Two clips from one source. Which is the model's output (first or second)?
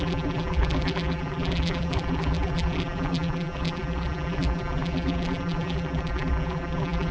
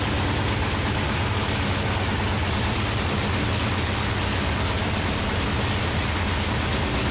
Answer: first